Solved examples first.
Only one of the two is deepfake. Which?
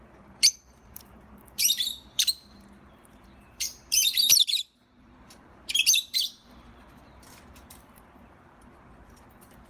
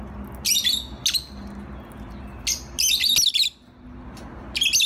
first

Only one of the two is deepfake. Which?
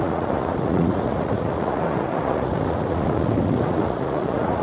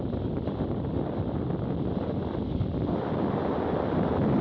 first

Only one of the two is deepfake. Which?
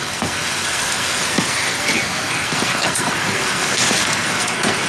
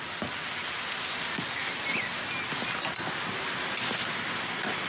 first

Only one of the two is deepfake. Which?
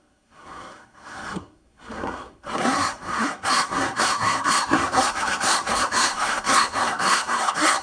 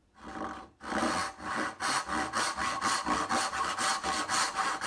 first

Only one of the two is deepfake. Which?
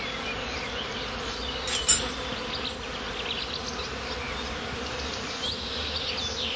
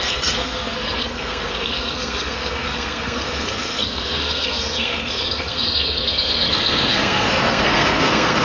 second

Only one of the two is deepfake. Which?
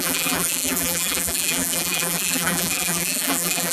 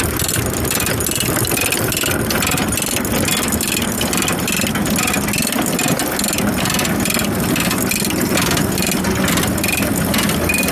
first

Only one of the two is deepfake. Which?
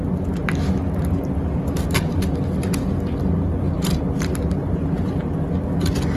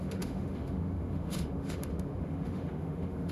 second